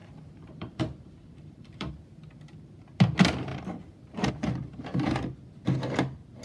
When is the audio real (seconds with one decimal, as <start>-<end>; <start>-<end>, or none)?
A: 1.9-3.5; 4.3-6.4